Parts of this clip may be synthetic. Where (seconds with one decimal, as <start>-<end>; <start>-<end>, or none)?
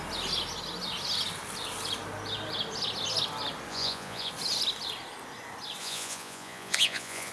3.7-4.3; 5.8-7.3